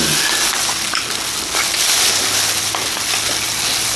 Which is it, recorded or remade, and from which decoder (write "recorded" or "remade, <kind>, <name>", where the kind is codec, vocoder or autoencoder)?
recorded